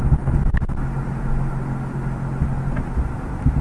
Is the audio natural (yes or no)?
yes